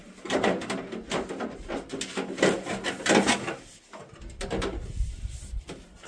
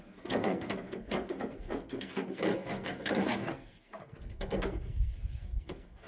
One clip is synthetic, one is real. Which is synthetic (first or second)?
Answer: second